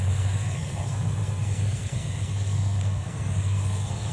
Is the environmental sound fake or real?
fake